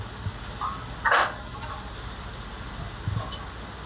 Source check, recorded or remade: recorded